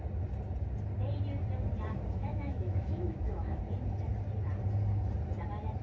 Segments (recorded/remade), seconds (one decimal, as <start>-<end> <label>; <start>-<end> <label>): 0.0-2.3 recorded; 2.3-3.6 remade; 3.6-5.8 recorded